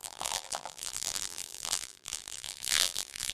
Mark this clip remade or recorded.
remade